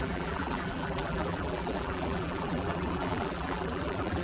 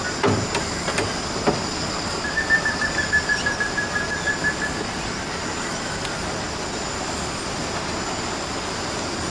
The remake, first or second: first